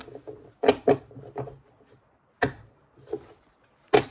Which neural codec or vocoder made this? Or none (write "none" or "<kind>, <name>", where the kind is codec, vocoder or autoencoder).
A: none